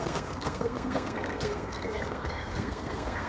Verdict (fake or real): fake